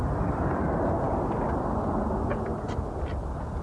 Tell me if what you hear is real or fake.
real